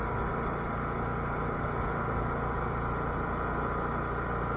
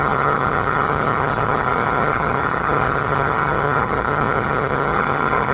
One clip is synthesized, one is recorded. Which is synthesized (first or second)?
second